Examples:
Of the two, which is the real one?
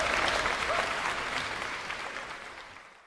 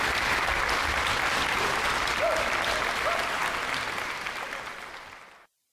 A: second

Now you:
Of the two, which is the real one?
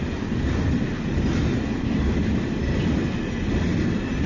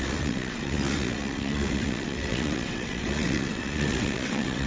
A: first